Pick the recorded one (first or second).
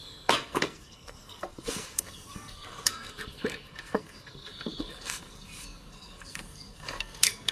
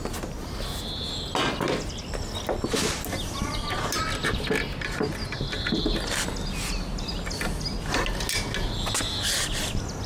second